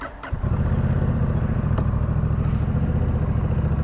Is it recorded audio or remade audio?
recorded